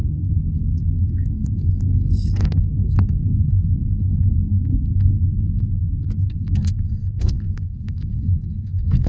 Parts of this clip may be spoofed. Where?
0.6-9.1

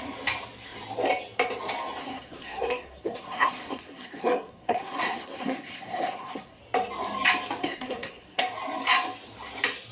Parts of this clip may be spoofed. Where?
2.0-6.6; 7.6-8.4

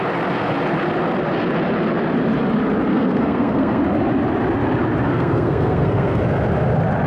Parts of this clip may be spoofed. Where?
2.9-3.8; 5.1-6.2

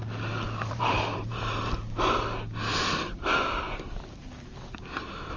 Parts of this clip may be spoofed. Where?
0.6-1.4

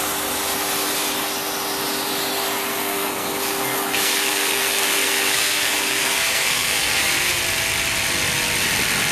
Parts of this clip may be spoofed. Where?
2.7-7.4

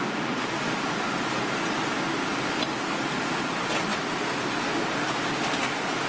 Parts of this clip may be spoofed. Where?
none